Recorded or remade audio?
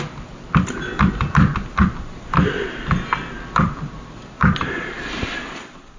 recorded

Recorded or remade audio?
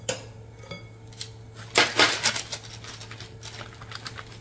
recorded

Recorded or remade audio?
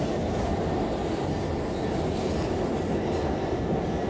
recorded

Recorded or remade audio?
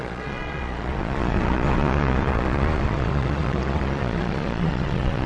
remade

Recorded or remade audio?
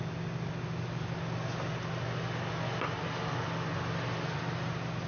recorded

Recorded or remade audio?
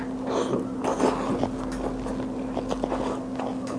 recorded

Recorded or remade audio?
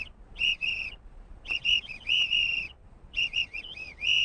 remade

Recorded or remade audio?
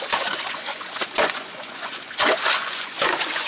remade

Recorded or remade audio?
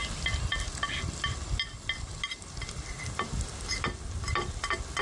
recorded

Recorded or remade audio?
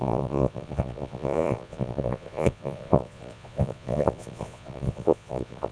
remade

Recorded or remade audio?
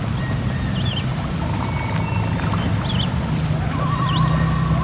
recorded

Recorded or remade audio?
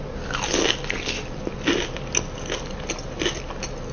recorded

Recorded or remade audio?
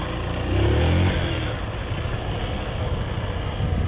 recorded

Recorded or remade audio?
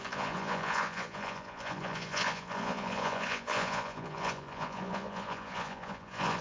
remade